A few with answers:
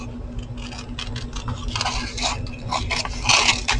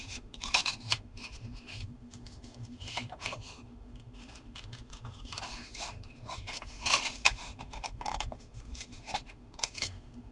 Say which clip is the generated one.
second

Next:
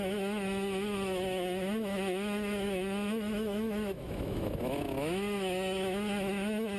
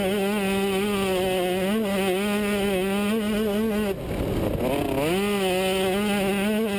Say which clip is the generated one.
first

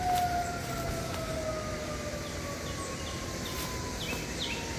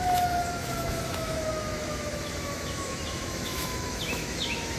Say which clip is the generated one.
second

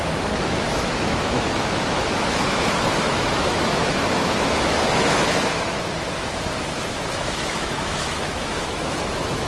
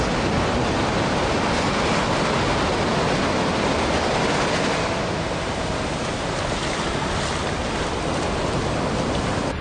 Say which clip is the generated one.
first